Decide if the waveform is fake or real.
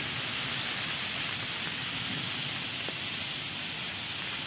real